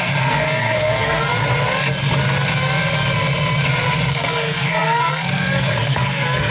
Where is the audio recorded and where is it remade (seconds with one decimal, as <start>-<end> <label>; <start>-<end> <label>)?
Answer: 0.0-1.3 remade; 1.3-4.1 recorded; 4.1-6.5 remade